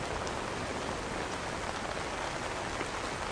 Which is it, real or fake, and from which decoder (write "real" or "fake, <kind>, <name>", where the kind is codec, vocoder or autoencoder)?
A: real